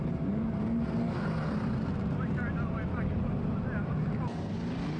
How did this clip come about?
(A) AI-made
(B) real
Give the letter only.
B